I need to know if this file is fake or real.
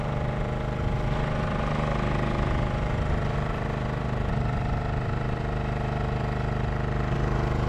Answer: real